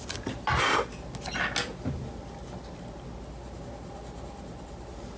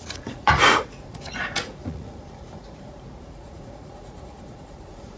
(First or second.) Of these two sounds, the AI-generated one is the second